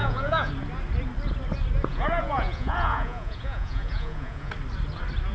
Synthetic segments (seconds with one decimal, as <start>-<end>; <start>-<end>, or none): 0.0-0.5; 1.9-4.5